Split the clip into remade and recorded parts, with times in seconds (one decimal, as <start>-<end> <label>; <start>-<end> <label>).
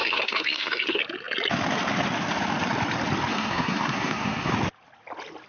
0.0-1.0 remade; 1.0-3.3 recorded; 3.3-4.5 remade; 4.5-5.5 recorded